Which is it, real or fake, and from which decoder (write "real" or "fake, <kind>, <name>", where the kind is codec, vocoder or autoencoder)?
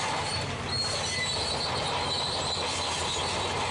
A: real